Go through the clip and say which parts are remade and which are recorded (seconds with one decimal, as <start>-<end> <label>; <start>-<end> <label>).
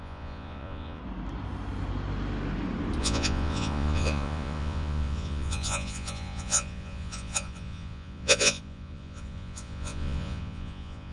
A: 0.0-1.0 remade; 1.0-3.0 recorded; 3.0-11.1 remade